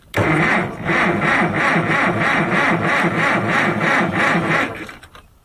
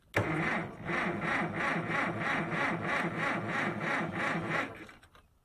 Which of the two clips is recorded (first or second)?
second